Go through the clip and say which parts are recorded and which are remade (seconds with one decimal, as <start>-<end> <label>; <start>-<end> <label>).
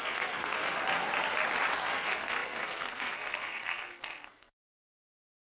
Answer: 0.0-0.8 remade; 0.8-1.9 recorded; 1.9-5.6 remade